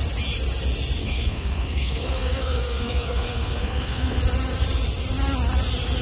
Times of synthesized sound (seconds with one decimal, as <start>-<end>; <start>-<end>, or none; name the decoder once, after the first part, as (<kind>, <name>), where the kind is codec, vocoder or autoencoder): 1.0-4.2 (codec, SNAC)